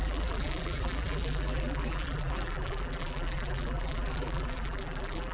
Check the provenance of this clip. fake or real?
fake